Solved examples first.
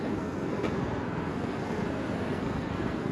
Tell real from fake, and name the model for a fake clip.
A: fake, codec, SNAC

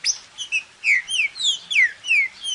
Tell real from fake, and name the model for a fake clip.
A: real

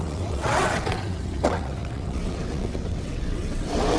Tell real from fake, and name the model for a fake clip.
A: fake, vocoder, WaveNeXt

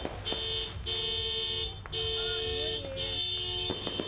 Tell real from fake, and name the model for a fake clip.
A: real